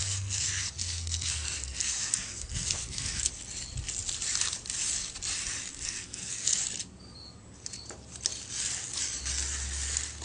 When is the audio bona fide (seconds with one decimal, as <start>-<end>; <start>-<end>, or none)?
3.4-5.7; 6.6-10.2